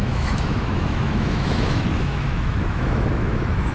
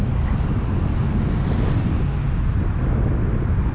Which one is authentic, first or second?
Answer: second